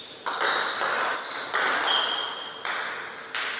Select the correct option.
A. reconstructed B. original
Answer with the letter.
B